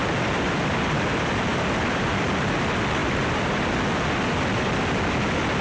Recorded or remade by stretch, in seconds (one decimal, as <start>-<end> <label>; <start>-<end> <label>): 0.0-2.1 remade; 2.1-3.0 recorded; 3.0-3.6 remade; 3.6-5.6 recorded